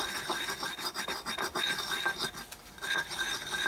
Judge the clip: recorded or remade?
recorded